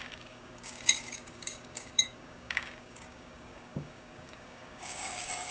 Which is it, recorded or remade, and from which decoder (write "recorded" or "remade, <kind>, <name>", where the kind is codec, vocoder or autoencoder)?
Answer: remade, codec, DAC